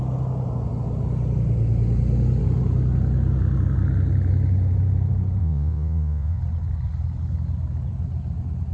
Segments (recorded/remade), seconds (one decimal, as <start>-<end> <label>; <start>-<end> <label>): 0.0-5.4 recorded; 5.4-6.4 remade; 6.4-8.7 recorded